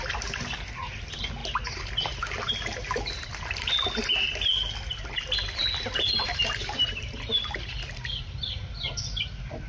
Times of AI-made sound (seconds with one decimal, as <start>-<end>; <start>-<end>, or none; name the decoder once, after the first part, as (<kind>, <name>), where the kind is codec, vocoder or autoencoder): 5.6-9.2 (vocoder, BigVGAN v2)